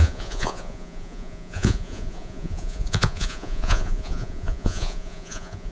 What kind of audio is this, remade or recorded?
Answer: remade